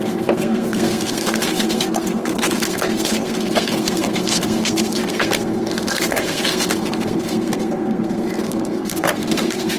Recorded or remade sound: remade